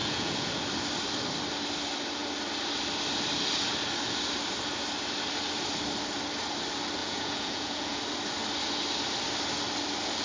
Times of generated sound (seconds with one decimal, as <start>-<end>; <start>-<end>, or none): 0.0-0.5; 7.0-8.0